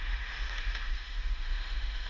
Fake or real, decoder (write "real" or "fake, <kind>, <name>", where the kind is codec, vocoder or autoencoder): fake, autoencoder, DAC-VAE